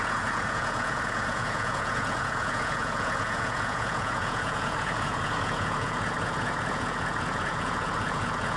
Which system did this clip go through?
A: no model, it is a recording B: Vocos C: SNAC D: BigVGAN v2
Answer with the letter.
B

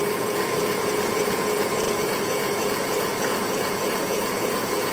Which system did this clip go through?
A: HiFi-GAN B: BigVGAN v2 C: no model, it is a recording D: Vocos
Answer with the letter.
D